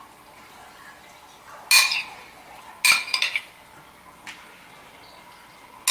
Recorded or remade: recorded